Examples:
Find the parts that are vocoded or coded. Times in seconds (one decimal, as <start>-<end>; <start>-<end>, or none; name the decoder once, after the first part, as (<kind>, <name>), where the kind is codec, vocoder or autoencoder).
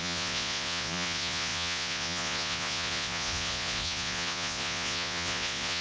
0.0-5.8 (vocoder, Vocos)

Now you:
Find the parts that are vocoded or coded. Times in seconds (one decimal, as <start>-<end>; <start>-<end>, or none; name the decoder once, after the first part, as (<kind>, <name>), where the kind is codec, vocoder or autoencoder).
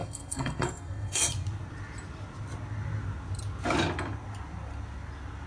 0.0-1.3 (codec, SNAC)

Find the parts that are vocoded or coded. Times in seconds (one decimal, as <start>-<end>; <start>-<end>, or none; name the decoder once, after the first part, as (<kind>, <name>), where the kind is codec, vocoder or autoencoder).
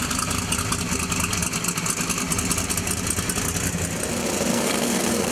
4.5-5.3 (codec, SNAC)